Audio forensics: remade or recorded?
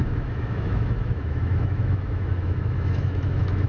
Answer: remade